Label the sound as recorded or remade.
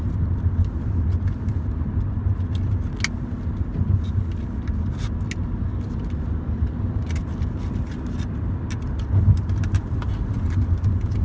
recorded